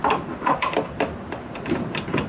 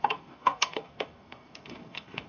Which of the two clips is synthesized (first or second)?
second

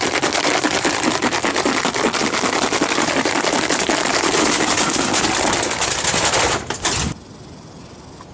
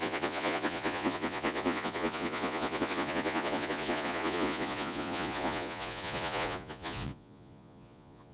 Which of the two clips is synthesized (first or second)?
second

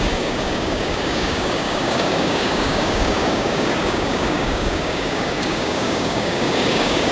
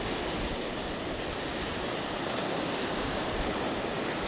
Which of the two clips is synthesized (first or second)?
first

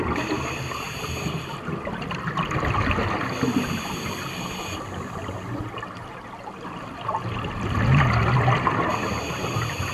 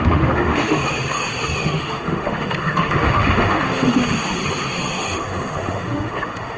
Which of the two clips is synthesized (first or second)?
second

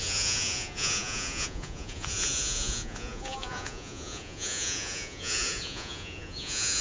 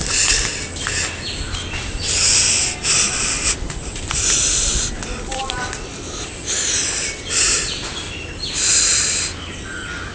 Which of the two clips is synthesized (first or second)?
first